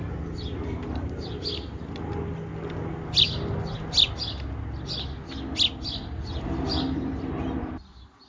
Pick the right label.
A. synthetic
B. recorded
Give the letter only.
B